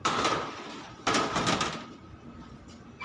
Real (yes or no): yes